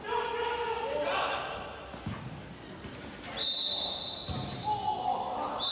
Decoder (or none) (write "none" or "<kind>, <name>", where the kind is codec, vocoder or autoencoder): none